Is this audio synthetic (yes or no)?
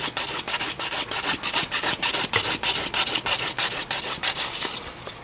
no